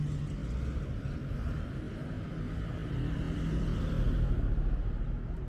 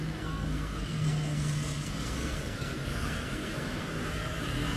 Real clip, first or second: first